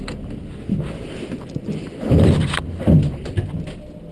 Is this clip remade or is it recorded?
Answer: recorded